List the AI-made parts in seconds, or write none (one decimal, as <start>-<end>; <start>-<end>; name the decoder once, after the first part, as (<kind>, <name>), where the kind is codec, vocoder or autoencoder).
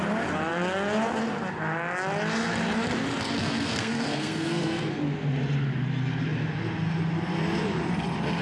3.4-5.0 (codec, SNAC)